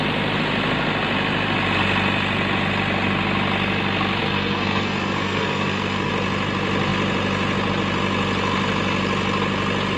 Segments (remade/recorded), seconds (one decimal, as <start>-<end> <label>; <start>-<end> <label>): 0.0-4.2 recorded; 4.2-6.1 remade; 6.1-10.0 recorded

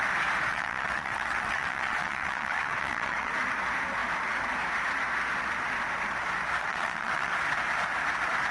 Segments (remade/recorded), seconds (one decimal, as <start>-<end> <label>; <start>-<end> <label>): 0.0-0.5 recorded; 0.5-3.3 remade; 3.3-6.6 recorded; 6.6-7.3 remade; 7.3-8.5 recorded

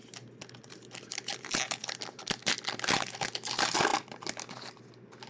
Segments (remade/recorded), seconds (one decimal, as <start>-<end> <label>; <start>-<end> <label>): 0.0-5.3 recorded